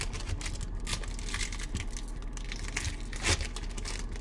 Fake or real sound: real